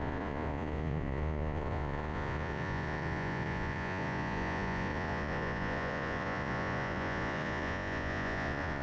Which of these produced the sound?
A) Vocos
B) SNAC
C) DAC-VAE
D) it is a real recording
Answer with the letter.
A